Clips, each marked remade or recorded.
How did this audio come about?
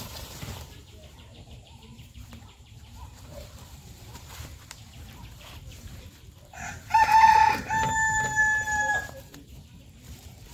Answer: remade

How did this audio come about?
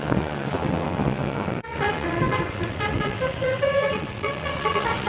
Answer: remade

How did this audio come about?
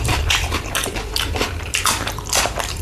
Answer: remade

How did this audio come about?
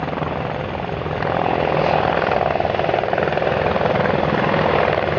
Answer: recorded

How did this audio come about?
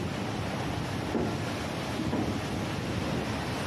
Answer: recorded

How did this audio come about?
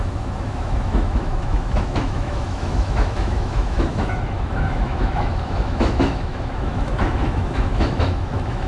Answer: remade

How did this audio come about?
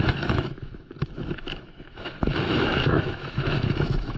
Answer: remade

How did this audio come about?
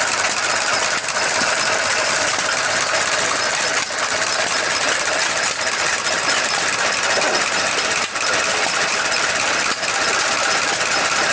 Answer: recorded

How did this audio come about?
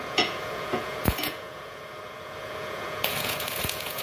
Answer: remade